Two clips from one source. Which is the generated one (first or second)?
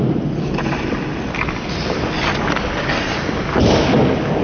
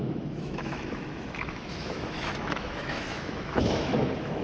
second